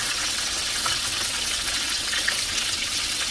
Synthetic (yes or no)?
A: yes